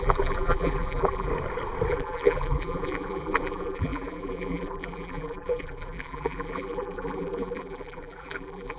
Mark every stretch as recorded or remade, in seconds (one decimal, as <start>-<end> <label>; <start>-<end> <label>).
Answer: 0.0-1.3 remade; 1.3-1.9 recorded; 1.9-8.8 remade